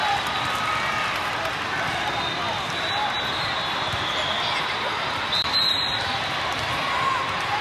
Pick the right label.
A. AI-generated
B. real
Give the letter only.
A